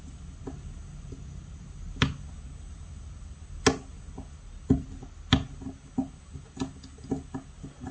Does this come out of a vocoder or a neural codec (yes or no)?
no